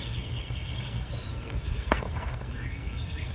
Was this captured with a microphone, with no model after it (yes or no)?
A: no